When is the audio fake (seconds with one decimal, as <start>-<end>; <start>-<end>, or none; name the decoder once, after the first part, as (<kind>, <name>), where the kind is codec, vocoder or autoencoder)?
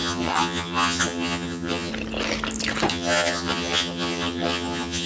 0.0-1.9 (vocoder, HiFi-GAN); 2.9-5.1